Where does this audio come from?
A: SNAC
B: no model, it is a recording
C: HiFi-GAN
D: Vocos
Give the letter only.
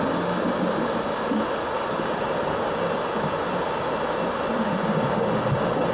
B